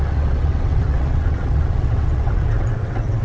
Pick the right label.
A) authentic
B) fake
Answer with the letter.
B